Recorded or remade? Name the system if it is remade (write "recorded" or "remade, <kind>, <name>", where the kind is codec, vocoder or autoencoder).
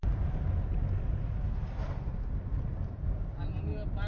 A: recorded